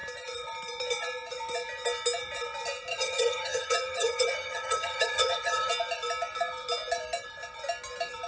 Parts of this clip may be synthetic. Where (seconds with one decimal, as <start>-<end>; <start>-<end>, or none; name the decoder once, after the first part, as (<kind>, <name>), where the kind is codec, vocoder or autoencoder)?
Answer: 2.9-5.7 (vocoder, HiFi-GAN)